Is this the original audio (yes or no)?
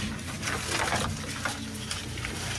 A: yes